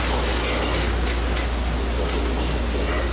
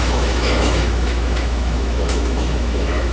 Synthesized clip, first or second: second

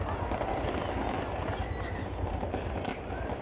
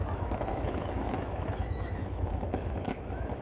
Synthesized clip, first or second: second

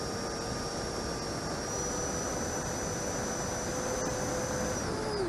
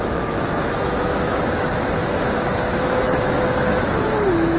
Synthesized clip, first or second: second